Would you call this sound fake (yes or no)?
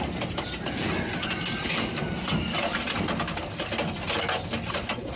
no